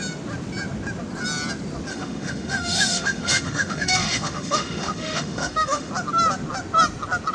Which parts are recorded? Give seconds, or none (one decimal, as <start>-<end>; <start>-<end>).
0.0-1.9; 5.9-7.3